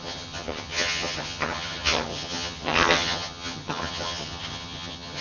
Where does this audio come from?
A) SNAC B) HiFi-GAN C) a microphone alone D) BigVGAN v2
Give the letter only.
B